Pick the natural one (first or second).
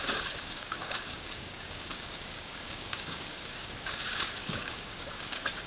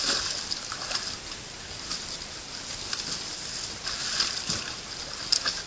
second